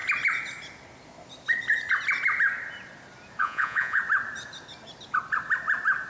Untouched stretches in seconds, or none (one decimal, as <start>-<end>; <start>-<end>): 0.0-3.4; 4.0-6.1